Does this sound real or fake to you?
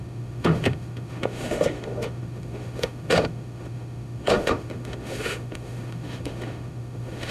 fake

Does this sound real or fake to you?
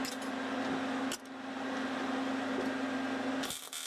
real